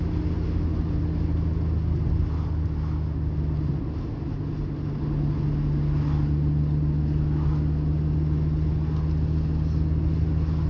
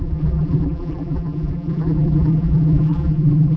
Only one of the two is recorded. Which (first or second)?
first